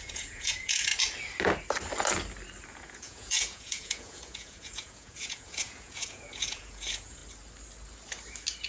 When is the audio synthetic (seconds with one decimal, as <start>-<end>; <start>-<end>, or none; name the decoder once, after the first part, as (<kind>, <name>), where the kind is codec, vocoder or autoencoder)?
0.0-0.9 (vocoder, Vocos); 2.7-7.2